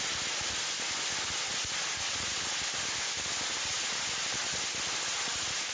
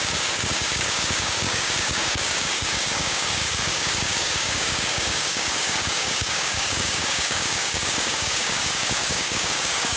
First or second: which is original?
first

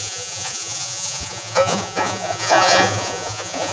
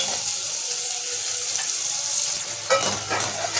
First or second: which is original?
second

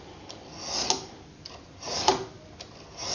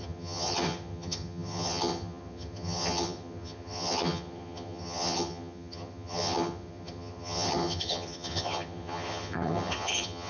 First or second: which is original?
first